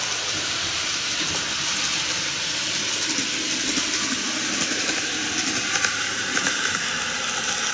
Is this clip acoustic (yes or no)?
yes